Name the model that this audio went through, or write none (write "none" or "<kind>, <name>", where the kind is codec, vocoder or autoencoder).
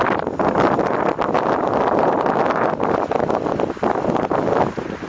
none